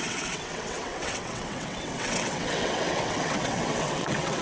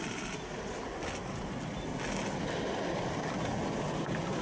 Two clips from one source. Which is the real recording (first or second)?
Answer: second